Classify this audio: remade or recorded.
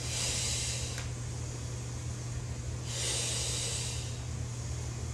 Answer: recorded